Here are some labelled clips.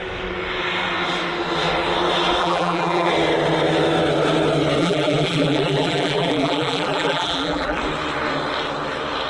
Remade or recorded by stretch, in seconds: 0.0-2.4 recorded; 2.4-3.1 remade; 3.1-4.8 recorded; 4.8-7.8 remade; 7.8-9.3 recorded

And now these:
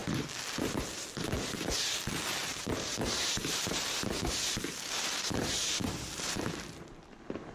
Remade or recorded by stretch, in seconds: 0.0-2.4 recorded; 2.4-6.4 remade; 6.4-7.5 recorded

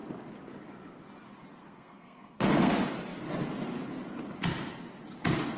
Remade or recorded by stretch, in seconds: 0.0-1.6 recorded; 1.6-2.7 remade; 2.7-5.6 recorded

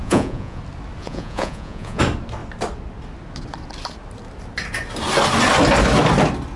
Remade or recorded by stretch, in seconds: 0.0-0.6 remade; 0.6-1.0 recorded; 1.0-2.0 remade; 2.0-6.6 recorded

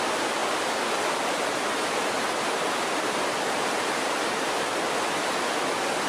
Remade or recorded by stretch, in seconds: 0.0-6.1 recorded

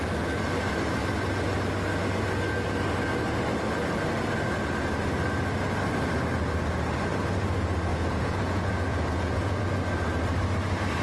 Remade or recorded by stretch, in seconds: 0.0-7.9 recorded; 7.9-9.6 remade; 9.6-11.0 recorded

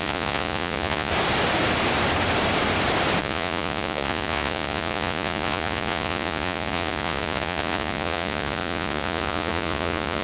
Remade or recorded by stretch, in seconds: 0.0-1.1 remade; 1.1-3.2 recorded; 3.2-10.2 remade

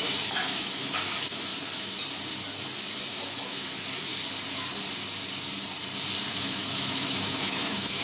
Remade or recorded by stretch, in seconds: 0.0-1.5 remade; 1.5-3.1 recorded; 3.1-4.1 remade; 4.1-6.3 recorded; 6.3-8.0 remade